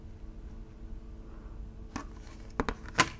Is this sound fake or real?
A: real